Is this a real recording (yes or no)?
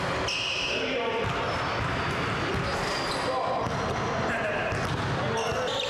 yes